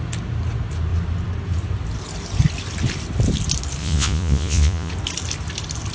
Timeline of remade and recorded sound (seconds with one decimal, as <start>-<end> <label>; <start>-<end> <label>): 0.0-3.8 recorded; 3.8-4.9 remade; 4.9-5.9 recorded